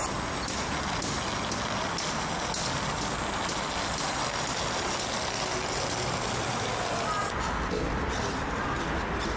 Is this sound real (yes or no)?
yes